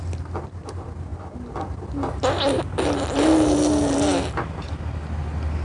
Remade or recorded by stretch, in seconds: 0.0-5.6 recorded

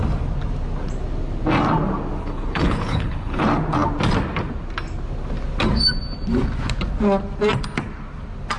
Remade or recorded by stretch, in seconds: 0.0-2.2 recorded; 2.2-3.4 remade; 3.4-8.6 recorded

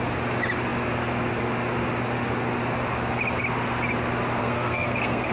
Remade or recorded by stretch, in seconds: 0.0-4.4 recorded; 4.4-5.3 remade

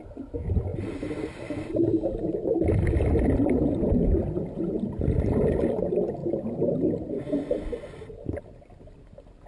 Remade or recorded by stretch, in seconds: 0.0-0.7 recorded; 0.7-4.8 remade; 4.8-6.2 recorded; 6.2-8.8 remade; 8.8-9.5 recorded

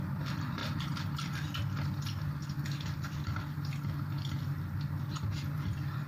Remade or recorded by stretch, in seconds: 0.0-6.1 recorded

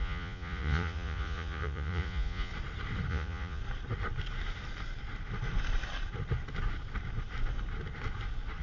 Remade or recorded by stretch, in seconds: 0.0-2.5 remade; 2.5-3.1 recorded; 3.1-3.6 remade; 3.6-8.6 recorded

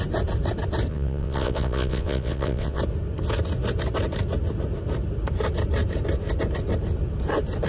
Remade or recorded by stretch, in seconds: 0.0-0.9 recorded; 0.9-2.8 remade; 2.8-7.7 recorded

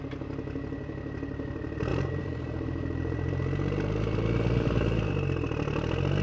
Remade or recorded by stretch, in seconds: 0.0-1.9 recorded; 1.9-5.1 remade; 5.1-6.2 recorded